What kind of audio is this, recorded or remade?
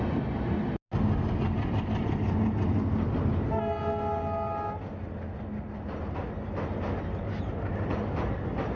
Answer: recorded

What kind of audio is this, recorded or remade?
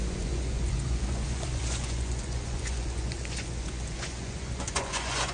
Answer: remade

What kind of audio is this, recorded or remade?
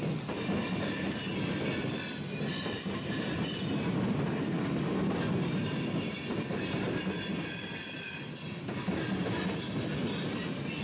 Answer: recorded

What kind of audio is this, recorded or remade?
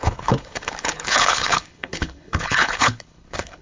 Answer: remade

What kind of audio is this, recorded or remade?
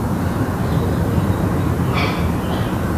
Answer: recorded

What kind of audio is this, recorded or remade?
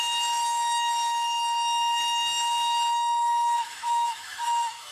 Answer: remade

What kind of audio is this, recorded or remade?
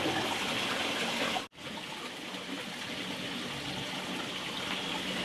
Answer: recorded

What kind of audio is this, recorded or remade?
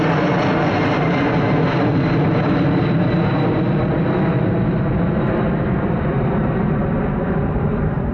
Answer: recorded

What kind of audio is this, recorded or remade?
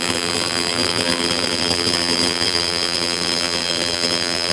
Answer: remade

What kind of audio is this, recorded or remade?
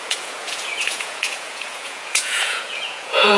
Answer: remade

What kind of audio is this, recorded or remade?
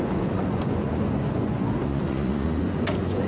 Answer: remade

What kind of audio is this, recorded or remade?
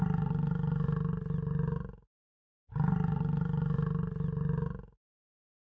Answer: recorded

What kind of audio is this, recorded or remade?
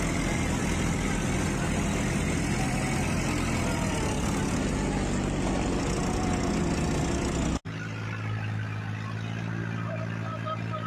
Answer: recorded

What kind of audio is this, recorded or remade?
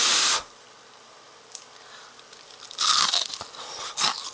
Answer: recorded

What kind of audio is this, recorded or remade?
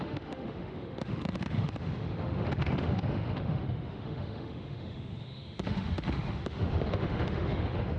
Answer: remade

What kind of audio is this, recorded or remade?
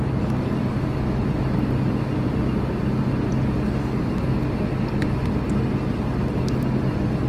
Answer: recorded